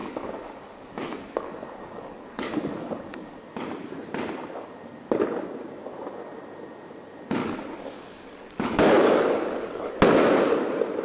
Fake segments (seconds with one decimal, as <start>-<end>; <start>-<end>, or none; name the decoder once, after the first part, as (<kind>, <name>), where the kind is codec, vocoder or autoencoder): 0.0-3.4 (codec, DAC); 7.4-10.0